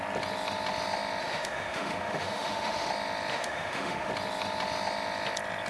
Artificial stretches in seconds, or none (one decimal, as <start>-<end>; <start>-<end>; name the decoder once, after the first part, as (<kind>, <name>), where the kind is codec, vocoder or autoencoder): 1.2-2.9 (autoencoder, DAC-VAE); 3.3-4.1